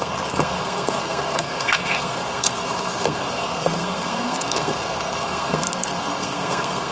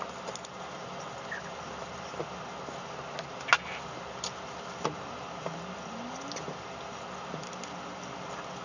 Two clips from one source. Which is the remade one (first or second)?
first